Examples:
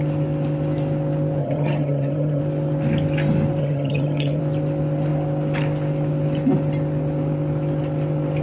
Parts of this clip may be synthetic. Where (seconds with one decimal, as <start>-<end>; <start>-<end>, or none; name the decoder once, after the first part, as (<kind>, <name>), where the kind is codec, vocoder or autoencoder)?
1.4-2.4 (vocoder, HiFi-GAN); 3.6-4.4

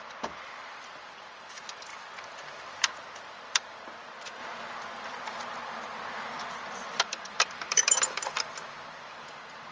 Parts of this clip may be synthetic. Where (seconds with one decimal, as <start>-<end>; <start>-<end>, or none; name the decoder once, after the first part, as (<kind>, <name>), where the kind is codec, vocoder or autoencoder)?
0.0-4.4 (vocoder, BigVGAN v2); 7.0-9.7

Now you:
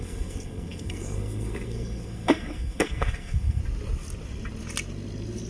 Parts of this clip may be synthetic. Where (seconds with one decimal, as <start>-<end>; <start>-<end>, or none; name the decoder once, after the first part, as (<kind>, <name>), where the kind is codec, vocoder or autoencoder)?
0.0-3.6 (codec, SNAC)

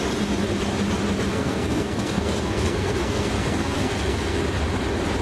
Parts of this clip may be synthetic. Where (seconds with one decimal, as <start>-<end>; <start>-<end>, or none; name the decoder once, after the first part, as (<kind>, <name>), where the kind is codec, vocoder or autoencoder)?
1.3-4.4 (codec, SNAC)

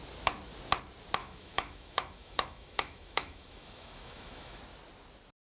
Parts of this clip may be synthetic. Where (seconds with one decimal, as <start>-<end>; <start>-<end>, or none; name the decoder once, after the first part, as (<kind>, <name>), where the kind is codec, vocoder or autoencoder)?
1.2-4.6 (autoencoder, DAC-VAE)

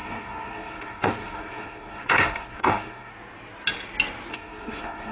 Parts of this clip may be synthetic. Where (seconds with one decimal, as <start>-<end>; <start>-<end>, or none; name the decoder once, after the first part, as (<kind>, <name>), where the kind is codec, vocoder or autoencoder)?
0.0-3.1 (codec, SNAC); 4.3-5.1

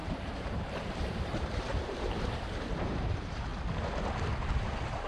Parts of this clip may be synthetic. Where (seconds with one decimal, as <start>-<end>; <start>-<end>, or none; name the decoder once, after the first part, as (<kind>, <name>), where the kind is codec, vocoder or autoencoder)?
0.0-3.5 (vocoder, BigVGAN v2); 4.4-5.1

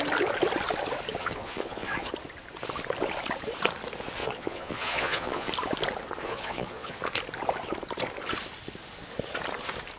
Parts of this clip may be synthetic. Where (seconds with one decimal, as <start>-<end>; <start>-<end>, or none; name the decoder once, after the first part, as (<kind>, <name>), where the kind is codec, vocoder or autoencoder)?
1.2-2.1 (vocoder, Vocos); 4.2-5.5; 6.2-7.0